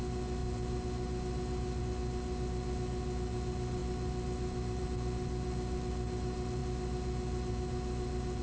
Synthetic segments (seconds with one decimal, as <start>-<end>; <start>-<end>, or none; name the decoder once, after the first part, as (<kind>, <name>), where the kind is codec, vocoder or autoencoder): none